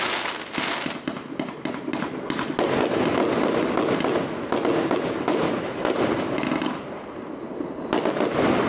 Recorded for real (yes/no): yes